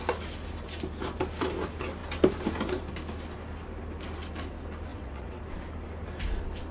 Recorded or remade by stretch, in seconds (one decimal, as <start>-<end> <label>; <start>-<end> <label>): 0.0-4.9 recorded; 4.9-5.4 remade; 5.4-6.7 recorded